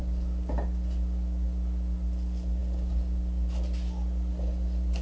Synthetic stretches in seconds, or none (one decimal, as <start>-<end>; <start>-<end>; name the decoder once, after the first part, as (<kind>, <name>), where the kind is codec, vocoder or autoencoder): none